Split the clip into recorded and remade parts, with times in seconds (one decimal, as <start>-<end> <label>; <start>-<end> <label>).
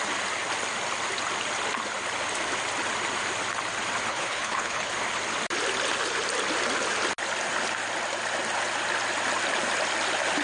0.0-4.1 recorded; 4.1-4.9 remade; 4.9-10.4 recorded